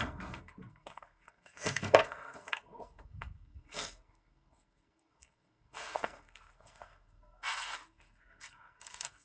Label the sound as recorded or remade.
remade